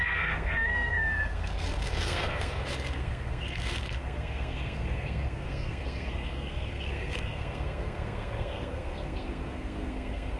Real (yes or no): no